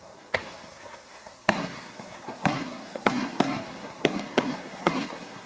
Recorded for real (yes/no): no